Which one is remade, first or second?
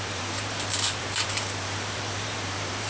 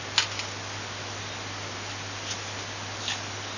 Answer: first